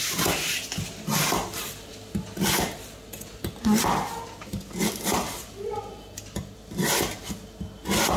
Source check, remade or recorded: recorded